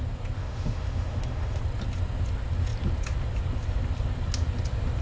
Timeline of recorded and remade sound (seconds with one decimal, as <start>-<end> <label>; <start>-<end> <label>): 0.0-0.4 recorded; 0.4-1.6 remade; 1.6-5.0 recorded